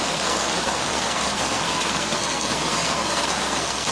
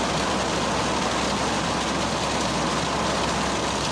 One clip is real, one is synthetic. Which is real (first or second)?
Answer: second